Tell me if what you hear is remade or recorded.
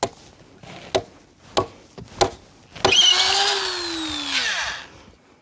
recorded